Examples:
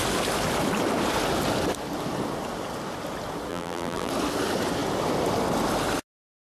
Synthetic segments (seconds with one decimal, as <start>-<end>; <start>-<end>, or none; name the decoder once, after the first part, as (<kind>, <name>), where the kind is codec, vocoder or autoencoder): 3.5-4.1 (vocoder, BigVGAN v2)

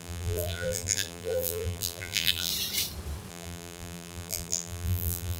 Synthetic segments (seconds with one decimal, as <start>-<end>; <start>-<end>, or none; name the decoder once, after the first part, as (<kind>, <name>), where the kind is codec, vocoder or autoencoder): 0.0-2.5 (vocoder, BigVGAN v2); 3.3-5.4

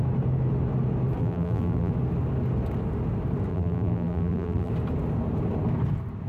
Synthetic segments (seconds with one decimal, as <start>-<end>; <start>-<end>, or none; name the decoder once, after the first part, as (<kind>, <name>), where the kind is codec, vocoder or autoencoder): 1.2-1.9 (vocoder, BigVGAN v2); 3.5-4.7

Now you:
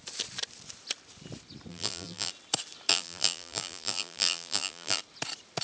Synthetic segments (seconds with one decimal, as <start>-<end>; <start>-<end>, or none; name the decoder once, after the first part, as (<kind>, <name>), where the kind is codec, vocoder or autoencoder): 1.7-2.3 (vocoder, BigVGAN v2); 2.9-5.0

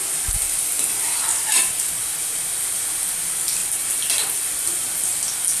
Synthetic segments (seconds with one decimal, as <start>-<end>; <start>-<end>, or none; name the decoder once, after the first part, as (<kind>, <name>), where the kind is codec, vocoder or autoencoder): 1.3-1.9 (vocoder, BigVGAN v2); 3.6-4.4

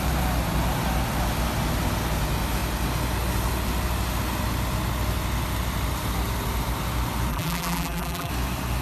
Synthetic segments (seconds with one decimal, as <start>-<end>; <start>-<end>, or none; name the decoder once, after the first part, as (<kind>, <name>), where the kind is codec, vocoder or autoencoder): 7.3-8.3 (vocoder, BigVGAN v2)